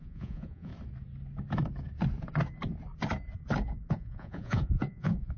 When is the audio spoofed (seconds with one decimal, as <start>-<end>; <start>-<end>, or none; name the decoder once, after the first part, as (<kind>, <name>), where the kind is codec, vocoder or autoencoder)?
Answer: 0.0-0.7 (vocoder, Vocos); 3.9-5.4